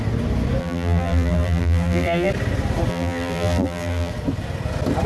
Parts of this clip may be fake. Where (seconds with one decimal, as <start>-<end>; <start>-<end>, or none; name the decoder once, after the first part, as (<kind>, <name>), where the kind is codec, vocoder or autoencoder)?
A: 0.6-2.3 (vocoder, BigVGAN v2); 2.9-4.1